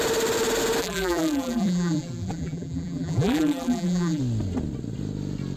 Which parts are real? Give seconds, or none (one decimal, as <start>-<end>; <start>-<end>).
0.0-0.8; 4.2-5.6

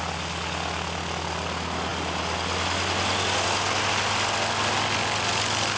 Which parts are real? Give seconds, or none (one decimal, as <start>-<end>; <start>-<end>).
0.0-5.8

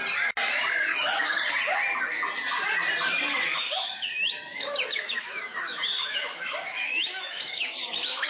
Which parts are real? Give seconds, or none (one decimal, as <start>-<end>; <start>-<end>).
0.0-0.9; 1.4-3.7

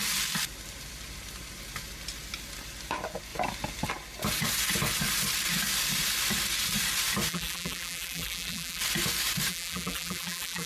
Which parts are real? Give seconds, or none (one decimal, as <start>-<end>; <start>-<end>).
0.0-7.3; 8.8-9.5

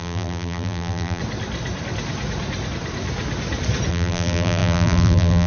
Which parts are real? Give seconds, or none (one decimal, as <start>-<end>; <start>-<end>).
1.2-3.9